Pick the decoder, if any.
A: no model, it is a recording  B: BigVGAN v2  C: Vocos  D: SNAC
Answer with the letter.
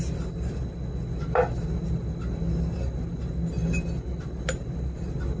A